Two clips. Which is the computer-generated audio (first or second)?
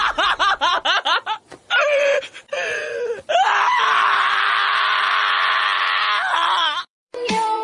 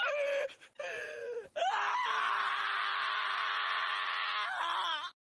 first